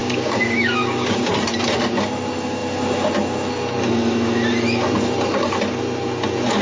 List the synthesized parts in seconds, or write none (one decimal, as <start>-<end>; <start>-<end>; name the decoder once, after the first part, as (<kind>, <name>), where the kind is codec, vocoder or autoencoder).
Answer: 0.0-1.3 (codec, DAC)